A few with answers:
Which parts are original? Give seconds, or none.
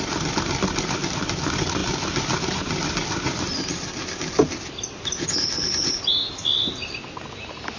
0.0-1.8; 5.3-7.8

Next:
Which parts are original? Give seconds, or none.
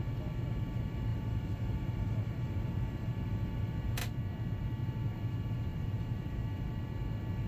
0.0-1.1; 3.1-5.7; 6.7-7.5